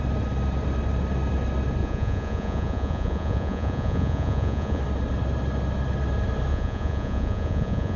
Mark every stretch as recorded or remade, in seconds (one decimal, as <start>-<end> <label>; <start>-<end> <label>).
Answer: 0.0-1.8 recorded; 1.8-4.8 remade; 4.8-6.5 recorded; 6.5-8.0 remade